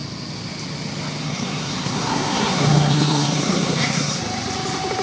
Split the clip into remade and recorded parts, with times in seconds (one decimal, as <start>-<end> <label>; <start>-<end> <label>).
0.0-1.2 recorded; 1.2-4.2 remade; 4.2-5.0 recorded